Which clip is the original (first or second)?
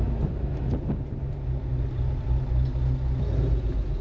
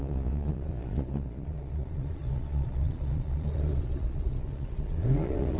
first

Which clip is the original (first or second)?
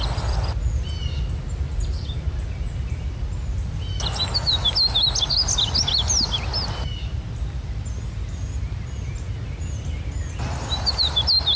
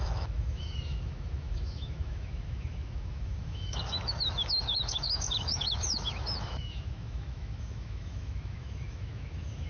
first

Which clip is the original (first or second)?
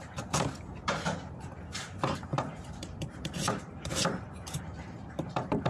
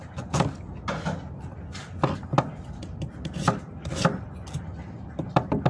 second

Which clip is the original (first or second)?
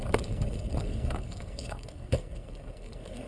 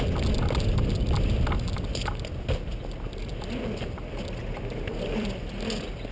second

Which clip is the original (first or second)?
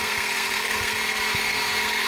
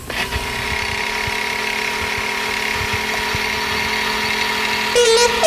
second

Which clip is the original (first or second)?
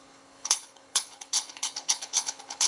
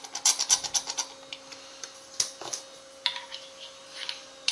second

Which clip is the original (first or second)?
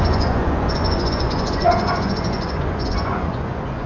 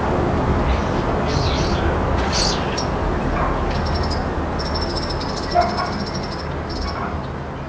second